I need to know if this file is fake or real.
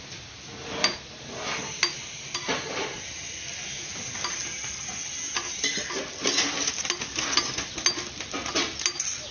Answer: real